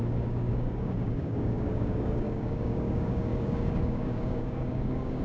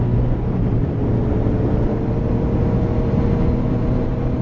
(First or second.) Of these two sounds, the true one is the second